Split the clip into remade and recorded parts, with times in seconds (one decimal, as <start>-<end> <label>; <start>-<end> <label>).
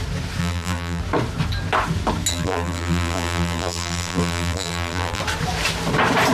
0.0-0.4 recorded; 0.4-1.0 remade; 1.0-2.3 recorded; 2.3-5.2 remade; 5.2-6.3 recorded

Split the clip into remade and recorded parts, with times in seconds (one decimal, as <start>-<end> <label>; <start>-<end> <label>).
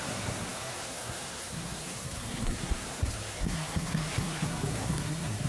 0.0-5.5 remade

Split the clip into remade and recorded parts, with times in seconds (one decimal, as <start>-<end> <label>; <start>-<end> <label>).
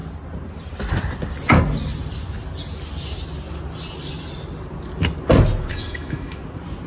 0.0-5.7 recorded; 5.7-6.4 remade; 6.4-6.9 recorded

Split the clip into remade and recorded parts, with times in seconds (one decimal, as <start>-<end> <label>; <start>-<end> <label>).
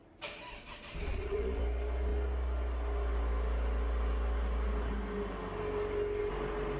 0.0-1.1 recorded; 1.1-1.6 remade; 1.6-6.8 recorded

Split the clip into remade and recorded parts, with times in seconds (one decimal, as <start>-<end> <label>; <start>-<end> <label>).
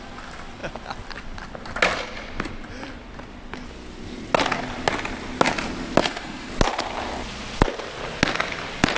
0.0-6.0 recorded; 6.0-6.5 remade; 6.5-9.0 recorded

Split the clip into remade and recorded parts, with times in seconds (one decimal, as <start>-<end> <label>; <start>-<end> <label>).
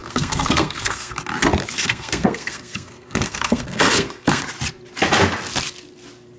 0.0-1.1 remade; 1.1-1.6 recorded; 1.6-4.4 remade; 4.4-6.4 recorded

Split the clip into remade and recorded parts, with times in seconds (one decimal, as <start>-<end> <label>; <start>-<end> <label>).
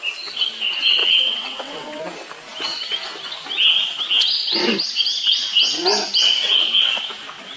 0.0-1.0 recorded; 1.0-2.0 remade; 2.0-7.6 recorded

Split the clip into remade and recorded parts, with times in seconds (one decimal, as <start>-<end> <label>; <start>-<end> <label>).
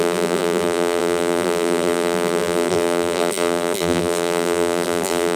0.0-5.4 remade